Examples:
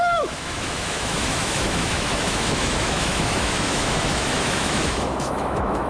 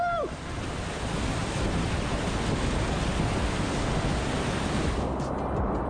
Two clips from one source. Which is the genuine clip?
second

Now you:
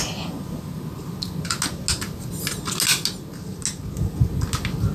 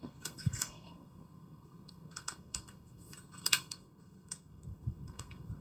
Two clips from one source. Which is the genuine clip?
first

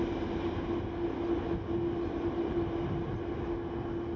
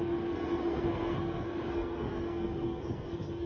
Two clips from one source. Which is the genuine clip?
first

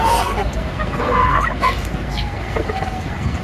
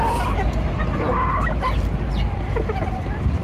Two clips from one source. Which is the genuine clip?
second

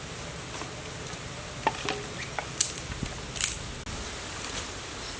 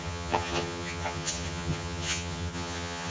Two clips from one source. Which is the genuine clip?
first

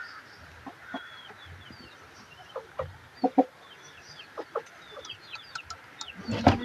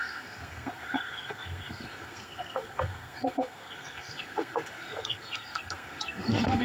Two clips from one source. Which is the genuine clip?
first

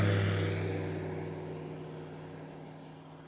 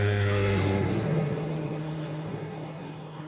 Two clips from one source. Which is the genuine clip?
first